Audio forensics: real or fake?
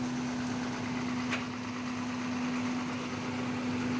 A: real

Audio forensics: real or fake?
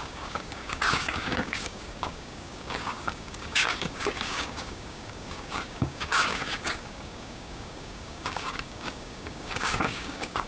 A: fake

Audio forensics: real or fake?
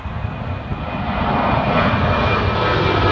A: real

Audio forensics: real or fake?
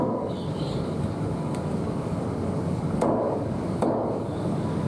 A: fake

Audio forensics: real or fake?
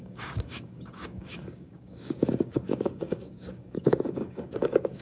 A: fake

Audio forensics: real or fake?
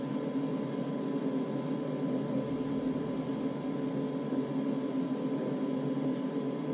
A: real